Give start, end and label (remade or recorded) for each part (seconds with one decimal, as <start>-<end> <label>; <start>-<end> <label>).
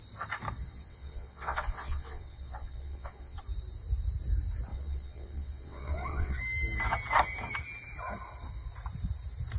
0.0-0.6 recorded; 0.6-3.4 remade; 3.4-4.7 recorded; 4.7-6.4 remade; 6.4-9.6 recorded